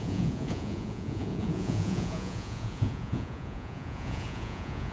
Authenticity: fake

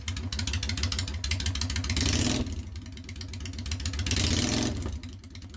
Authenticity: real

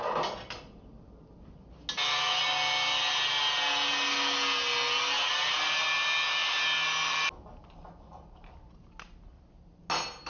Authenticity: real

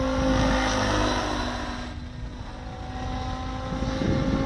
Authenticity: real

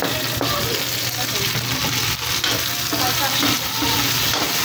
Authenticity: real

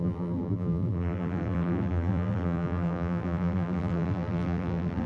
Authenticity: fake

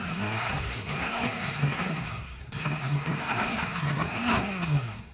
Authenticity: fake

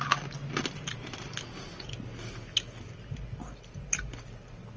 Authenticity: real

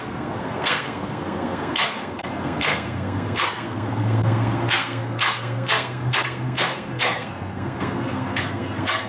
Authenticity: fake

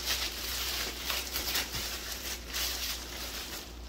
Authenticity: fake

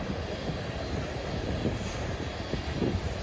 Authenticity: fake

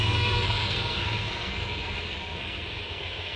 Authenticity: fake